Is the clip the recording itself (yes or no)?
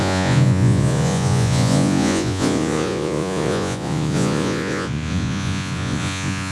no